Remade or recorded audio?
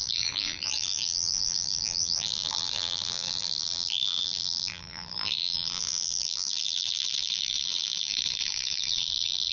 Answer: remade